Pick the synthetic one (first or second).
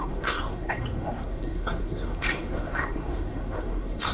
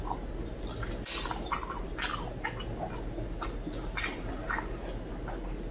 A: first